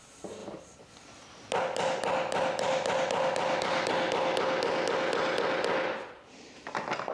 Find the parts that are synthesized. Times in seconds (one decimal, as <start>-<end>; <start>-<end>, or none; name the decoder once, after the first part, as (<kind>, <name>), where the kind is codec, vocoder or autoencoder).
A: none